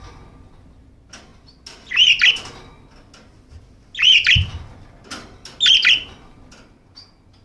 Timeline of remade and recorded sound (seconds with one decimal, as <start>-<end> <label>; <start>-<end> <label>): 0.0-7.4 recorded